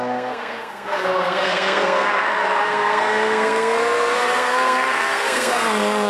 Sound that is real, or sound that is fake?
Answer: fake